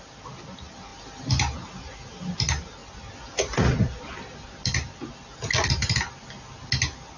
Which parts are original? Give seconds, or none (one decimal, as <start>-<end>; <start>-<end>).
0.0-7.2

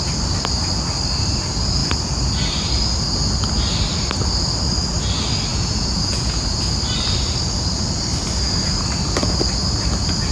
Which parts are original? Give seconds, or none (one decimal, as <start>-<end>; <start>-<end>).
0.0-5.5; 6.6-10.3